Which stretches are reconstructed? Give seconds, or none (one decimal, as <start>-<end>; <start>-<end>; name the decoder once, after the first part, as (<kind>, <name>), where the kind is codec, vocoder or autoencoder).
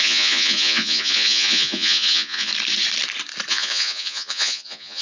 0.0-2.5 (vocoder, Vocos); 3.5-5.0